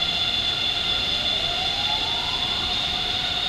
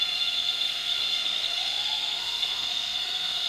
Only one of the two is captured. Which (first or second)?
first